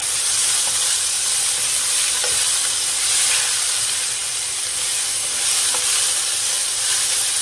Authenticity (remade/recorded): recorded